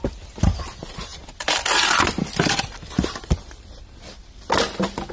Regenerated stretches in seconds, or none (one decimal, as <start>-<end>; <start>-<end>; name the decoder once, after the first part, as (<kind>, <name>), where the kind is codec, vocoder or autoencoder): 1.1-3.8 (vocoder, BigVGAN v2)